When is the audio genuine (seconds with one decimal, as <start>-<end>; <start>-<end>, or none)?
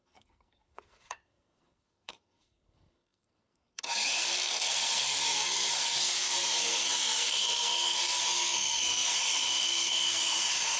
none